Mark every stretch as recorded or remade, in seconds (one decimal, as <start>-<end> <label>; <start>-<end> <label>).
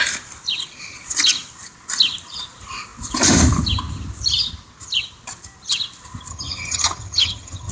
0.0-6.3 recorded; 6.3-7.7 remade